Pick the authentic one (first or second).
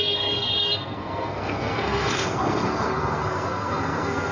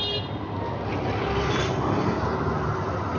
second